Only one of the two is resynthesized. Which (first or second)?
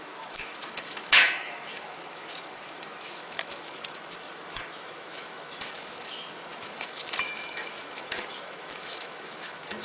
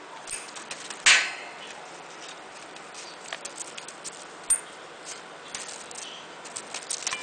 first